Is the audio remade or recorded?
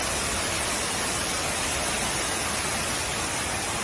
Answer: recorded